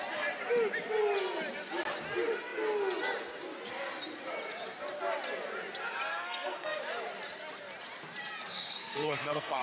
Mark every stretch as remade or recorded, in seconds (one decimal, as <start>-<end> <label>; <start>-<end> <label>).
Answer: 0.0-6.1 recorded; 6.1-6.8 remade; 6.8-8.5 recorded; 8.5-9.6 remade